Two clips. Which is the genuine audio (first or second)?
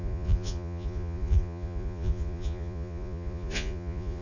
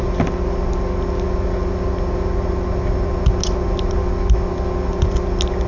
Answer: second